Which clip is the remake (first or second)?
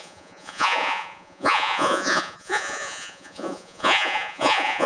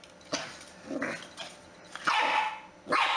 first